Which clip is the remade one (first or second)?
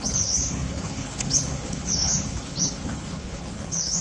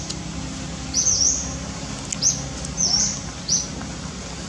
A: first